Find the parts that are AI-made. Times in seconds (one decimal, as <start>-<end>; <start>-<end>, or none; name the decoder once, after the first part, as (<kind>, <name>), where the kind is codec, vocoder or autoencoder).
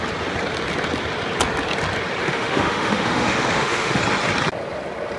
2.2-4.0 (autoencoder, DAC-VAE)